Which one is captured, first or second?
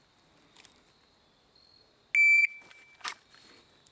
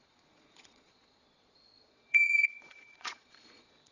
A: first